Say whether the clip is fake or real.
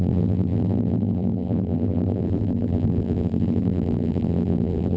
fake